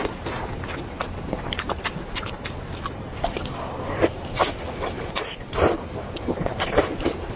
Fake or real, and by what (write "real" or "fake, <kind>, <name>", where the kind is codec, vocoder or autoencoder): fake, vocoder, BigVGAN v2